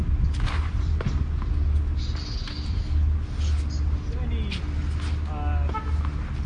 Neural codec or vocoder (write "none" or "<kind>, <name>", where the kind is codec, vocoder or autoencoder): none